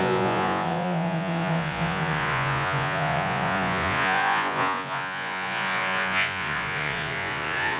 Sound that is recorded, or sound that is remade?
remade